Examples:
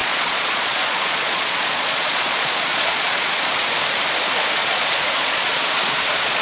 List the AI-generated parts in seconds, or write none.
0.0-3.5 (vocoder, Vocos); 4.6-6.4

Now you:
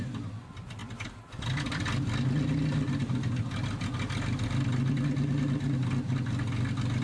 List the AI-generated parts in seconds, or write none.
none